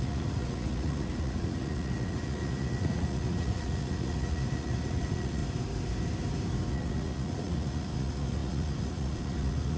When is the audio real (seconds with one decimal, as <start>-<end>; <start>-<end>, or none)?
5.4-6.7